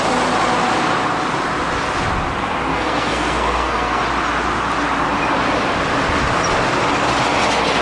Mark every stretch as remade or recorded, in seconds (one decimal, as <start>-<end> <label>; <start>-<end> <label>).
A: 0.0-2.7 recorded; 2.7-4.0 remade; 4.0-7.8 recorded